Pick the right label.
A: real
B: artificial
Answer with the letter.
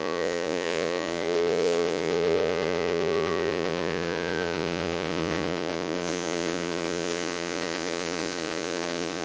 B